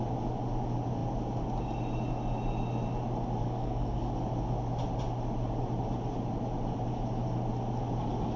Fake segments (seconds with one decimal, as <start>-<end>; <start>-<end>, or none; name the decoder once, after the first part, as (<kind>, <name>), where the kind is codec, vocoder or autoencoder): 3.4-4.1 (codec, SNAC)